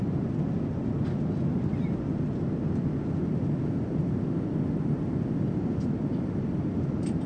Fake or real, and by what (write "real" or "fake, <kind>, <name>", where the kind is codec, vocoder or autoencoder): real